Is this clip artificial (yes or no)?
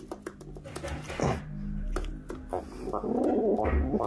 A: no